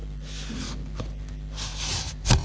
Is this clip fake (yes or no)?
no